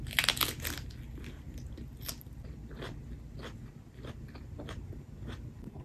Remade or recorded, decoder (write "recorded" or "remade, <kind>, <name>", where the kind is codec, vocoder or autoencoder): recorded